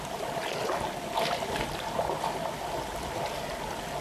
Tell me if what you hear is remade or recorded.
recorded